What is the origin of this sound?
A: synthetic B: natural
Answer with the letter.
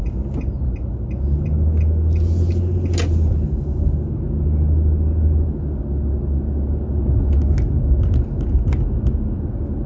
B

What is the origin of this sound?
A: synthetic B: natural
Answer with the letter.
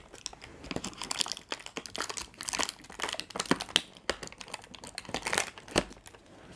B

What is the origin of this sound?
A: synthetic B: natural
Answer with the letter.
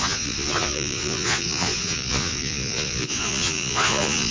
A